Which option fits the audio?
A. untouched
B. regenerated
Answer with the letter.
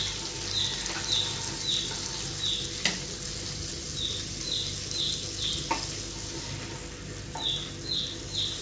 A